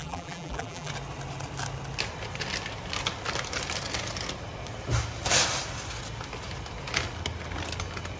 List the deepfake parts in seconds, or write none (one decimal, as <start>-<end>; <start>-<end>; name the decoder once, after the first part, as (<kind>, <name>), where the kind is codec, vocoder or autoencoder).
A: 0.0-0.9 (vocoder, BigVGAN v2)